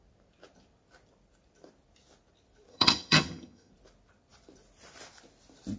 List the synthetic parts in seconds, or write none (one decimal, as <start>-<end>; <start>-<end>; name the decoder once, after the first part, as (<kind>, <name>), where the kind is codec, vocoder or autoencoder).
2.7-3.7 (vocoder, HiFi-GAN)